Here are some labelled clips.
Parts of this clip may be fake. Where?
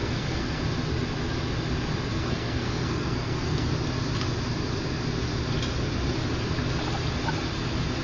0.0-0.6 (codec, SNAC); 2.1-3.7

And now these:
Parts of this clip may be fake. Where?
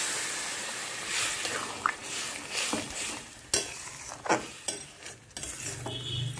none